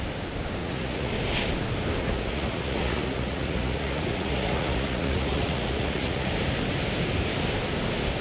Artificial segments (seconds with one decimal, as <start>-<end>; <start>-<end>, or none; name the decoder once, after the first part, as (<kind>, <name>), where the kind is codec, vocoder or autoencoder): 0.6-1.1 (vocoder, Vocos); 2.0-6.3